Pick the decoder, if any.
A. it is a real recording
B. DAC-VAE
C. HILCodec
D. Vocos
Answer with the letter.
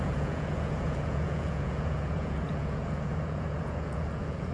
D